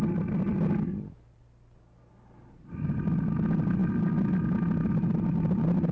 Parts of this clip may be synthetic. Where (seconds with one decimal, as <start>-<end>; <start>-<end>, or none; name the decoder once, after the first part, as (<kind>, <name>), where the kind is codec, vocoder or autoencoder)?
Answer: none